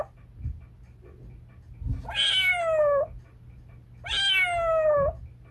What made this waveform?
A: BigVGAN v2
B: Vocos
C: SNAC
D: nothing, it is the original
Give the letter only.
D